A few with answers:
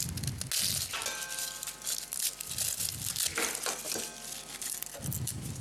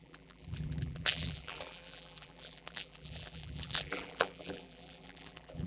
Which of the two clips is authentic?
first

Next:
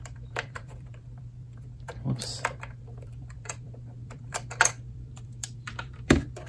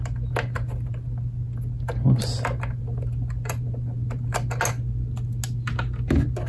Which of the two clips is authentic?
second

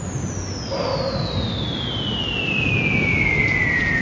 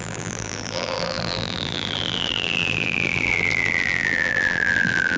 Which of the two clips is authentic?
first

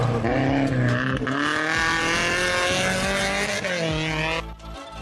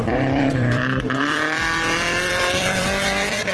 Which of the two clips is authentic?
first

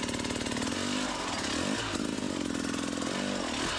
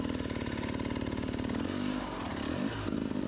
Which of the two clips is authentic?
first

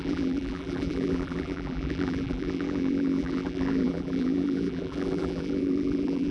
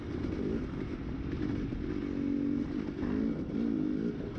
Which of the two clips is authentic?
second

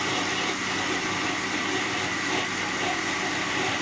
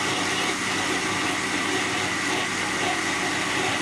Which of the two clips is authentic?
second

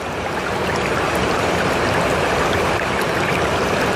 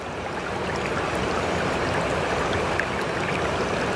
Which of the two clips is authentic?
second